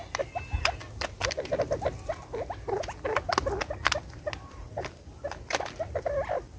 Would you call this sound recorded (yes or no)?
yes